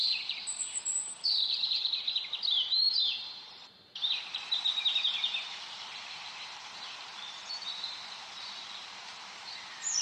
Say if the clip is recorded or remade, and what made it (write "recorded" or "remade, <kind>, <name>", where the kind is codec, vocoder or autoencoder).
remade, vocoder, BigVGAN v2